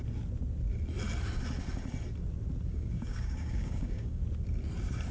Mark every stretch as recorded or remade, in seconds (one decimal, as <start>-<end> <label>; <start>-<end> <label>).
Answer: 0.0-2.7 recorded; 2.7-4.2 remade; 4.2-5.1 recorded